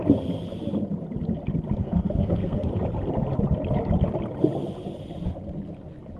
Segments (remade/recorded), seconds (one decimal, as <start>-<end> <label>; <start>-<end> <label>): 0.0-1.8 recorded; 1.8-2.7 remade; 2.7-6.2 recorded